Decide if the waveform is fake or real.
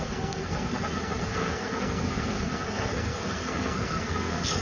fake